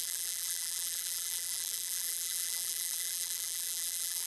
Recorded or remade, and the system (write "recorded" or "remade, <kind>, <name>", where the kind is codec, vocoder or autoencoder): remade, vocoder, BigVGAN v2